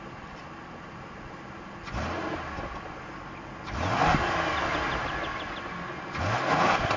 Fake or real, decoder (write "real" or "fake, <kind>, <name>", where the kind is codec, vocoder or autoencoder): real